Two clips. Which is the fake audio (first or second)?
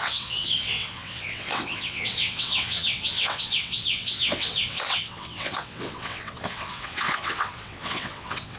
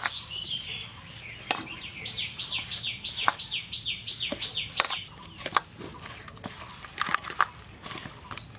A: first